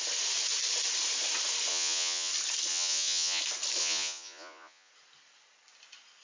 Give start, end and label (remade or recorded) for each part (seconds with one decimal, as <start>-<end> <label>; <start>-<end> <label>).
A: 0.0-1.7 recorded; 1.7-2.3 remade; 2.3-2.7 recorded; 2.7-3.4 remade; 3.4-3.8 recorded; 3.8-4.9 remade; 4.9-6.2 recorded